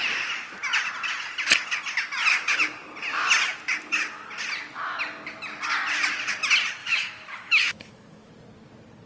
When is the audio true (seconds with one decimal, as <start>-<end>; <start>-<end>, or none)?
0.0-6.8; 8.3-9.1